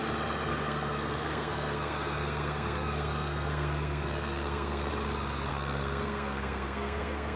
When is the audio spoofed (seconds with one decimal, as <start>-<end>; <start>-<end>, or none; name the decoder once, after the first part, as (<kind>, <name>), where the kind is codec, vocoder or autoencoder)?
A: 0.5-4.9 (codec, SNAC); 5.5-7.4